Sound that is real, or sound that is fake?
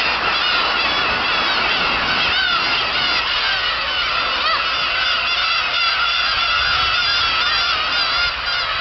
real